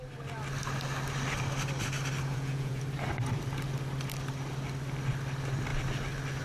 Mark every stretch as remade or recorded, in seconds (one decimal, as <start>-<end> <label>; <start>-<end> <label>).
0.0-2.3 recorded; 2.3-2.8 remade; 2.8-6.4 recorded